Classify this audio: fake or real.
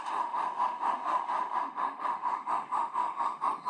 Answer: fake